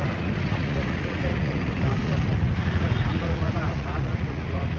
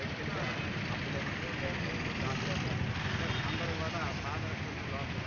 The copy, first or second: first